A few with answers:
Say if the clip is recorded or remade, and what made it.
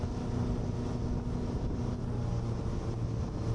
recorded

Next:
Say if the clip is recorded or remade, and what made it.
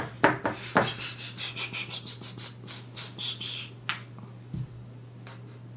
recorded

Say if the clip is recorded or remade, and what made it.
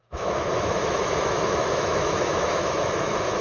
remade, autoencoder, DAC-VAE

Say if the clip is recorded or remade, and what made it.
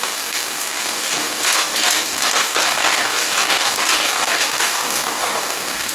remade, codec, DAC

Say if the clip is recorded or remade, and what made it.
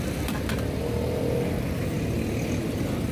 recorded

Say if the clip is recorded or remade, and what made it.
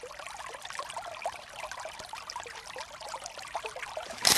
remade, vocoder, BigVGAN v2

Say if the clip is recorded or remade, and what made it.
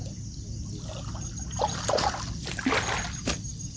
recorded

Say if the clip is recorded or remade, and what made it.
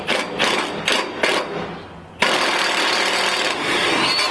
recorded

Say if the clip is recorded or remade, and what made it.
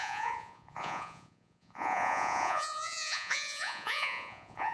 remade, vocoder, Vocos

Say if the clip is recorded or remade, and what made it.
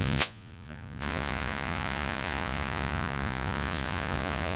remade, vocoder, Vocos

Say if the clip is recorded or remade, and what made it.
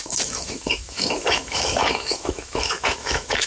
remade, autoencoder, DAC-VAE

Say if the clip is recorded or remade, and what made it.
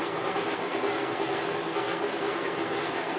remade, codec, SNAC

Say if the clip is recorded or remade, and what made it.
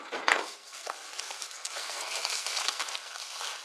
remade, codec, SNAC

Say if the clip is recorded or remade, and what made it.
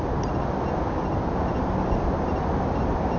recorded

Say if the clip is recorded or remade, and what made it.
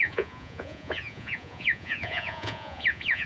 remade, vocoder, Vocos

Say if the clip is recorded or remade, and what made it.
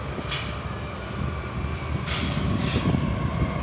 recorded